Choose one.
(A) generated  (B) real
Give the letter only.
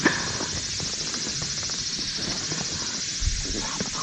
B